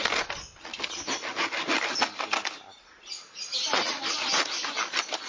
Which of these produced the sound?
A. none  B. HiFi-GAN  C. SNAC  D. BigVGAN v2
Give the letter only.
A